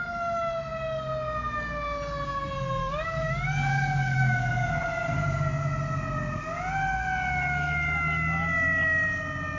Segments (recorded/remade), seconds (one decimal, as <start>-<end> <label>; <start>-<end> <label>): 0.0-2.8 recorded; 2.8-4.7 remade; 4.7-9.6 recorded